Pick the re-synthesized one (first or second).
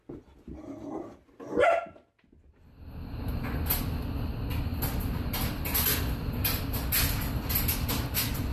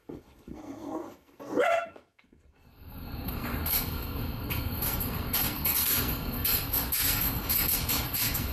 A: second